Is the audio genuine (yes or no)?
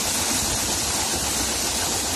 yes